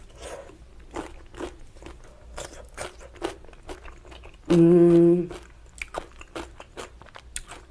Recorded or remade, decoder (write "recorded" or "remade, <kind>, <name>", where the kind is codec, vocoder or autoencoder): recorded